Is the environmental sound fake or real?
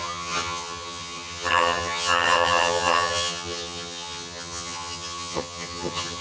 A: fake